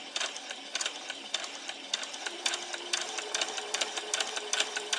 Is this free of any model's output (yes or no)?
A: yes